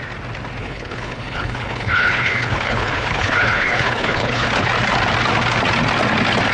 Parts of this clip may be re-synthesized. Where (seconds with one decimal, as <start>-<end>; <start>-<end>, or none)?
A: 0.6-4.5